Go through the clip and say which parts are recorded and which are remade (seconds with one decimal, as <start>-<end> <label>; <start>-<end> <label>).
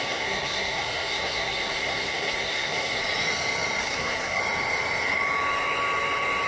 0.0-3.0 remade; 3.0-3.8 recorded; 3.8-4.4 remade; 4.4-6.5 recorded